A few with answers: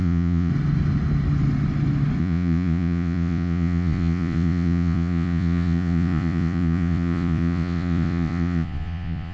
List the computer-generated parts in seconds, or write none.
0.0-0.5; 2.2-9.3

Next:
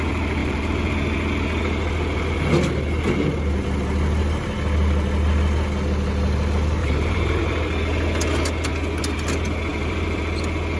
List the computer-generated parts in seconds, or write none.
0.4-0.9; 6.8-7.4; 9.7-10.2